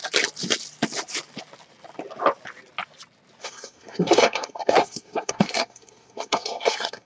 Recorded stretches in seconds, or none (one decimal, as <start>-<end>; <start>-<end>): 0.0-3.4